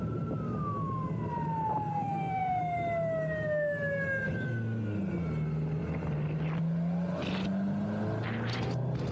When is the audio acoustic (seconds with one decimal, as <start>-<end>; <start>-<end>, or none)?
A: 0.0-1.9; 2.6-9.1